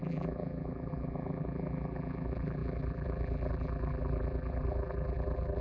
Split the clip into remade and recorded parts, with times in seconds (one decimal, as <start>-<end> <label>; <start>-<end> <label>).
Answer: 0.0-5.6 remade